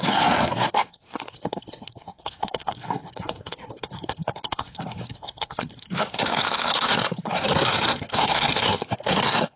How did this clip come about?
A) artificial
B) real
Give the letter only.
A